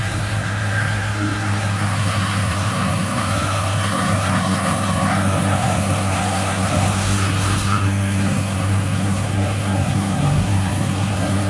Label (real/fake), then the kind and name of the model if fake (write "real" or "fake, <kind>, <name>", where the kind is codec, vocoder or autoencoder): fake, codec, SNAC